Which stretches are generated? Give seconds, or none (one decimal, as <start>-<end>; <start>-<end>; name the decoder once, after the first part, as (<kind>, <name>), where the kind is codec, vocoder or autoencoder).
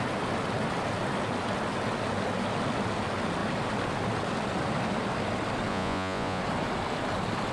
5.7-6.4 (vocoder, Vocos)